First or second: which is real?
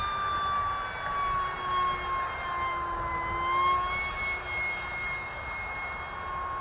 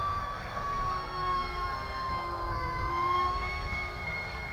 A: first